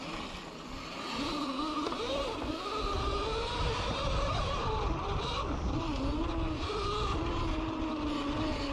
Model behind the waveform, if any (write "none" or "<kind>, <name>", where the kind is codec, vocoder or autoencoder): none